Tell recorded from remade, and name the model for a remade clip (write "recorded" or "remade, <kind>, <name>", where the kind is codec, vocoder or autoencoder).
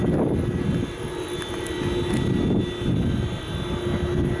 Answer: recorded